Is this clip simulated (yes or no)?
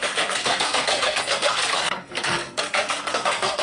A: yes